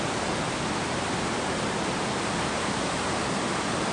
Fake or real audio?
real